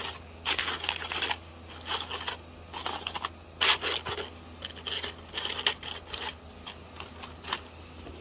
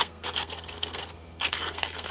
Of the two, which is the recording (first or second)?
first